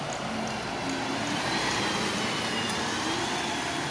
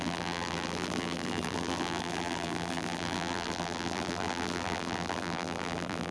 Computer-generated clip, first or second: second